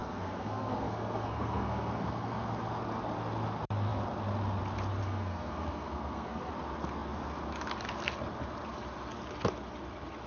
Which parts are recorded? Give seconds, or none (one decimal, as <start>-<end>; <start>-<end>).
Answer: 2.7-5.0; 6.5-10.3